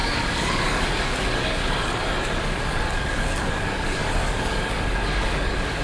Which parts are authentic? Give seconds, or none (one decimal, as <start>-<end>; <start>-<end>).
none